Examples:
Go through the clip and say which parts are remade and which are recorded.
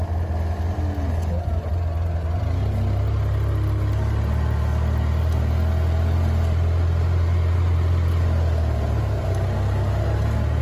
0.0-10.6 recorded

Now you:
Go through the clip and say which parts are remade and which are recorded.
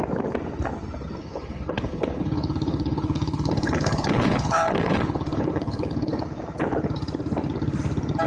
0.0-1.2 recorded; 1.2-6.1 remade; 6.1-8.3 recorded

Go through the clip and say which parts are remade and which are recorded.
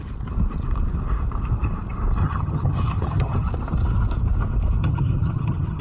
0.0-2.2 recorded; 2.2-3.5 remade; 3.5-4.8 recorded; 4.8-5.8 remade